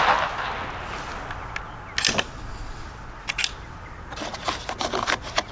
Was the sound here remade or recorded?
recorded